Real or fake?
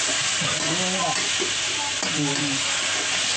real